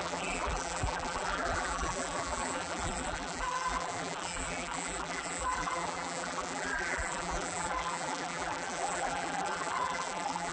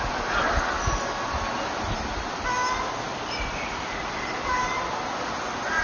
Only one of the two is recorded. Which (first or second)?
second